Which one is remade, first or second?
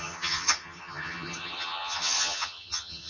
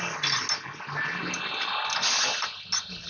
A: first